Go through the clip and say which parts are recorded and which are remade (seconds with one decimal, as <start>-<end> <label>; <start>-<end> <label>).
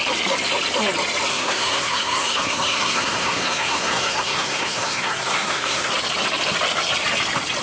0.0-1.3 recorded; 1.3-5.9 remade; 5.9-7.6 recorded